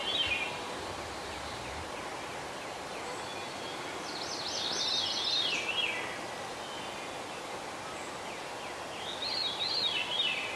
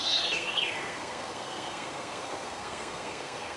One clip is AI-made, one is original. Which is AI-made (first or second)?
second